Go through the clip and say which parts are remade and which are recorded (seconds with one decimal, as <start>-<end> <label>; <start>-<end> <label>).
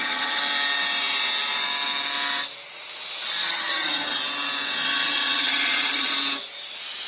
0.0-0.4 remade; 0.4-3.5 recorded; 3.5-4.2 remade; 4.2-4.8 recorded; 4.8-6.1 remade; 6.1-7.1 recorded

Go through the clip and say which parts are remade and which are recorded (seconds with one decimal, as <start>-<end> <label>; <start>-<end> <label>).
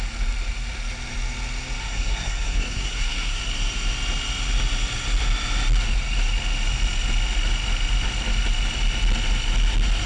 0.0-1.8 recorded; 1.8-3.4 remade; 3.4-10.1 recorded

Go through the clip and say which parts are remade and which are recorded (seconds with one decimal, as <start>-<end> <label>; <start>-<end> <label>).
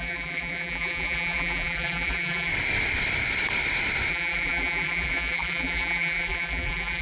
0.0-2.5 remade; 2.5-4.1 recorded; 4.1-7.0 remade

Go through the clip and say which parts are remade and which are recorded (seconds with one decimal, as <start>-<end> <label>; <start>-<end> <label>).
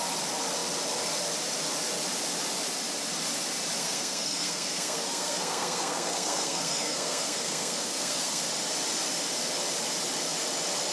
0.0-3.8 recorded; 3.8-8.5 remade; 8.5-10.9 recorded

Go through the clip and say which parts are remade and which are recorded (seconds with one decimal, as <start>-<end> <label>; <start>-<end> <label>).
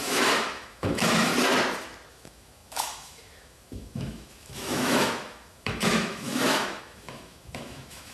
0.0-1.3 remade; 1.3-2.1 recorded; 2.1-8.1 remade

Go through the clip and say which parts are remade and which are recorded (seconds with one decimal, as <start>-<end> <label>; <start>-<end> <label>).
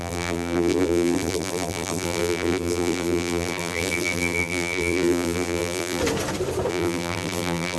0.0-6.0 remade; 6.0-6.7 recorded; 6.7-7.8 remade